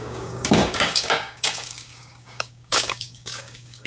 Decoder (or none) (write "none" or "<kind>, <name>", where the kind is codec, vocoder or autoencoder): codec, DAC